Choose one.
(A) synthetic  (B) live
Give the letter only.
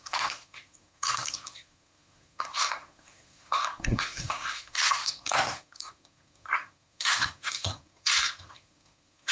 A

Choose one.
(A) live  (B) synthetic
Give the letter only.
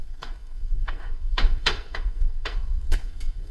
B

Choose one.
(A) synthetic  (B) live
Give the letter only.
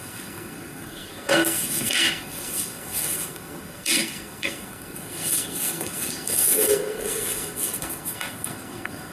A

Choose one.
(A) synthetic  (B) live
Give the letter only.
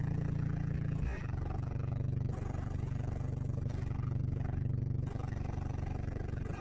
B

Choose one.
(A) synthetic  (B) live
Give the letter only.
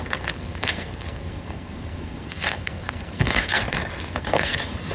A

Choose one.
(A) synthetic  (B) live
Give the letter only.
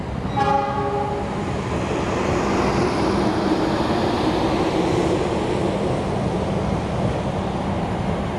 B